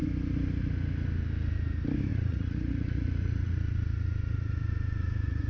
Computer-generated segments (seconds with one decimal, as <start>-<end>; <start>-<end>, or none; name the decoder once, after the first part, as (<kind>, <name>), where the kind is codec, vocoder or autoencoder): 2.1-5.5 (vocoder, Vocos)